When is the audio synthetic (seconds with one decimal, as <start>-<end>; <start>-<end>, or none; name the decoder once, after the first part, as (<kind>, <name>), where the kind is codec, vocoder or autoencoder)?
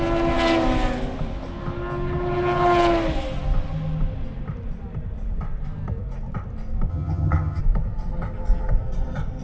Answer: 6.9-7.6 (vocoder, HiFi-GAN)